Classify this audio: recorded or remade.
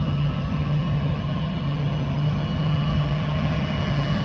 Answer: remade